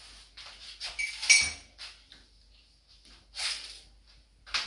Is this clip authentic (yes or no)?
yes